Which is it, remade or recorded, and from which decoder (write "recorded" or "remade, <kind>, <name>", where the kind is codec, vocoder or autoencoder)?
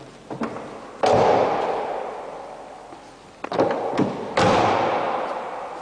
recorded